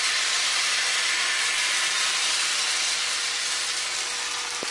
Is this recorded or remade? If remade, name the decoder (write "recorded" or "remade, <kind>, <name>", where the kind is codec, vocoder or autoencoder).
recorded